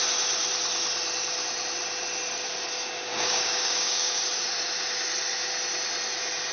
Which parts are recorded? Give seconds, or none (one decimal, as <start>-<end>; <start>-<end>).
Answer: 0.0-3.1; 4.2-6.5